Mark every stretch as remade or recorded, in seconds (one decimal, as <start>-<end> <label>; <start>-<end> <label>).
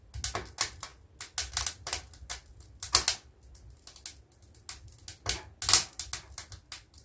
0.0-7.0 recorded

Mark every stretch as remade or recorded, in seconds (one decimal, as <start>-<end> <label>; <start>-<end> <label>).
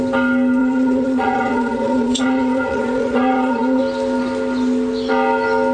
0.0-0.6 recorded; 0.6-3.8 remade; 3.8-5.7 recorded